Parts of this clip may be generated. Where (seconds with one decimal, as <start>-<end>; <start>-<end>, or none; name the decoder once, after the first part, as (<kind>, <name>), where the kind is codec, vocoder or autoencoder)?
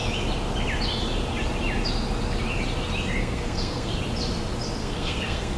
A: 3.2-3.9 (codec, SNAC); 4.8-5.6